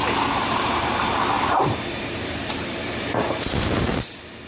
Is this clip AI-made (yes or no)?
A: yes